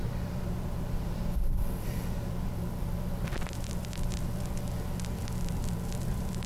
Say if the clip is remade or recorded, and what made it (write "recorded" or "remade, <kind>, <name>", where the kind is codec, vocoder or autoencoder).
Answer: remade, vocoder, BigVGAN v2